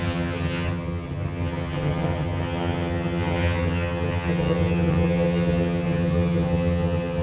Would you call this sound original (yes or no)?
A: no